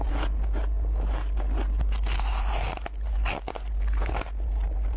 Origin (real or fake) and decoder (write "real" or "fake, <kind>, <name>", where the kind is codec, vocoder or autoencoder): real